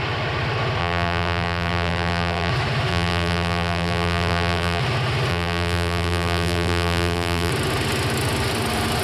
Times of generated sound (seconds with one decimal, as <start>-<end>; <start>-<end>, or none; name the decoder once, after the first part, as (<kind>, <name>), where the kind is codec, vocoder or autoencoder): 0.8-2.5 (vocoder, BigVGAN v2); 2.9-4.8; 5.3-7.5